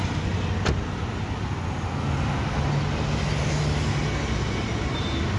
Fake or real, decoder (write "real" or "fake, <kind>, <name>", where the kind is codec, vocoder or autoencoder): real